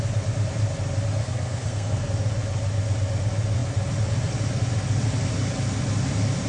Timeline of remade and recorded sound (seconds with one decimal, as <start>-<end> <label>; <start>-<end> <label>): 0.0-1.2 recorded; 1.2-2.1 remade; 2.1-6.5 recorded